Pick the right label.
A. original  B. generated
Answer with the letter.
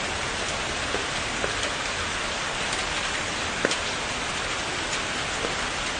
A